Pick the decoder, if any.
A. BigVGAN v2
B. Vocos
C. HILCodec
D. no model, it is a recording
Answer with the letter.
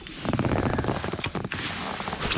D